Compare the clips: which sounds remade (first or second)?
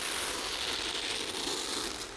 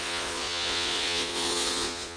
second